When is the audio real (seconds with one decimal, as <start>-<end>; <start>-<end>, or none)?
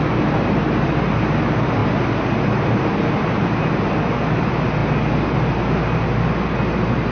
0.0-7.1